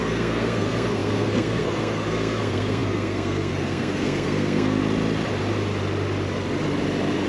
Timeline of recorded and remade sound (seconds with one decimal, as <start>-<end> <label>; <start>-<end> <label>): 0.0-4.8 remade; 4.8-7.3 recorded